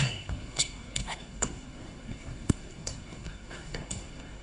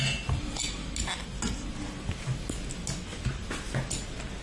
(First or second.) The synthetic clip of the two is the first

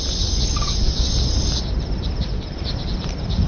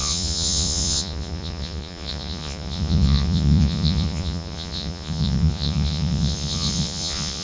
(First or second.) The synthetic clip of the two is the second